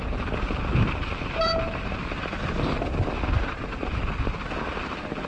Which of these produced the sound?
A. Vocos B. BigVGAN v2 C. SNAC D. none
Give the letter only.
D